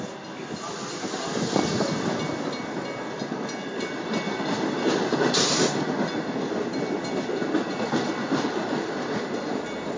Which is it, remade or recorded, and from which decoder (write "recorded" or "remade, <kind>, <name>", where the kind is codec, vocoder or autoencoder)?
recorded